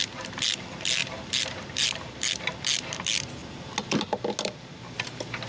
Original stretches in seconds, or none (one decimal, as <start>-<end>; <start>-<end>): 0.0-1.0; 2.4-5.5